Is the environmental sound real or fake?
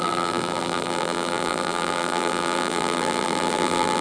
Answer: fake